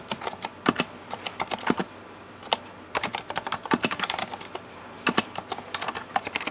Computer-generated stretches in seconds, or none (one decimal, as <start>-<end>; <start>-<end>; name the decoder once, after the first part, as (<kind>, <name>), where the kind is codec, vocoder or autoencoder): 1.8-5.2 (vocoder, BigVGAN v2)